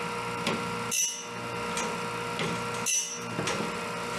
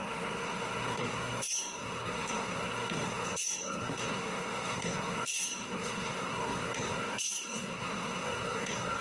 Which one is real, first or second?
first